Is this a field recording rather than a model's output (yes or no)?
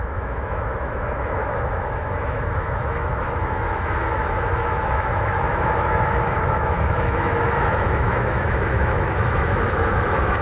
no